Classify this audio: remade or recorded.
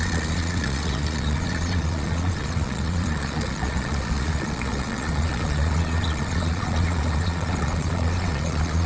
remade